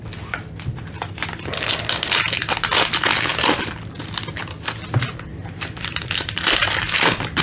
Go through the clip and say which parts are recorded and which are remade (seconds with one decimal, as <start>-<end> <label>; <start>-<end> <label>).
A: 0.0-5.3 recorded; 5.3-7.4 remade